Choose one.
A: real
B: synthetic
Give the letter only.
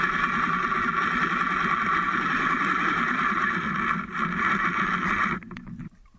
B